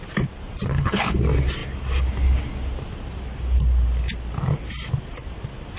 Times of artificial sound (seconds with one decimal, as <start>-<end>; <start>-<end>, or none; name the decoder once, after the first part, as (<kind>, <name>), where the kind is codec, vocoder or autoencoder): 0.7-1.2 (codec, HILCodec)